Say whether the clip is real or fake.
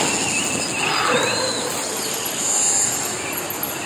real